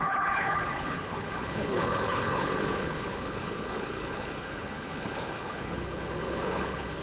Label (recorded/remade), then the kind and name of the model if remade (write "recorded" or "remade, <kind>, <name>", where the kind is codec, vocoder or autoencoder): remade, codec, HILCodec